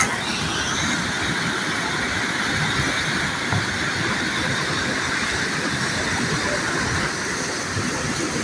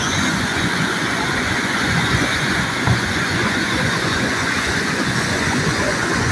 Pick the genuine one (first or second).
first